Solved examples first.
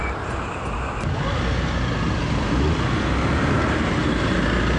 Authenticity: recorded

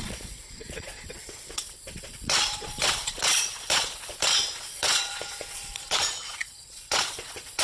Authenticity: remade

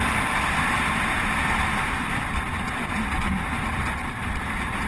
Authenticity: recorded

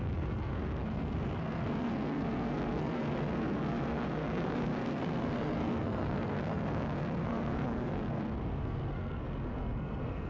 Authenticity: remade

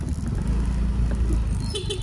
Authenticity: recorded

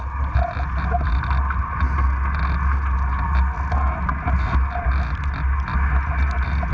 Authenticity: recorded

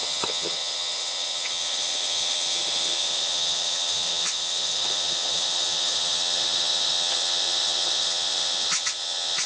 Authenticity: remade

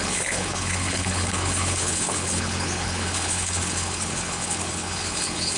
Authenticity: remade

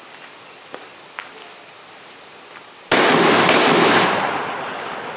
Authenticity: recorded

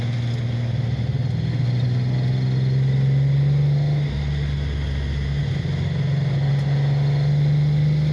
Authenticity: recorded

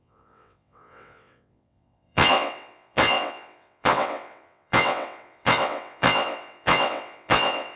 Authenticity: remade